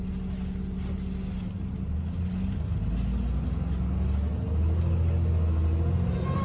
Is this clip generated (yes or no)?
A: no